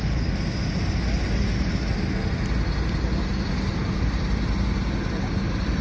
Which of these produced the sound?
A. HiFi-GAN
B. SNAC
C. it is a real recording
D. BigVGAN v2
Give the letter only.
C